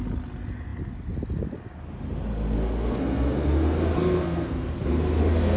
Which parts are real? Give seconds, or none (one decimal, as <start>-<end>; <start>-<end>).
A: 0.0-2.3